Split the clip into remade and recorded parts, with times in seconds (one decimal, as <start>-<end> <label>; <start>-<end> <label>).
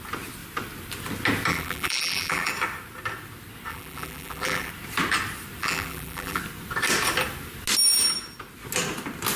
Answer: 0.0-1.5 recorded; 1.5-2.5 remade; 2.5-3.7 recorded; 3.7-4.7 remade; 4.7-5.6 recorded; 5.6-6.4 remade; 6.4-9.4 recorded